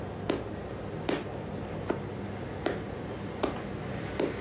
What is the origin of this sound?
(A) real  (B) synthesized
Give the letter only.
A